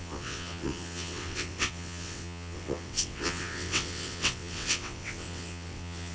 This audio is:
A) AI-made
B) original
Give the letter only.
A